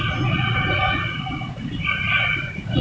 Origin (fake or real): fake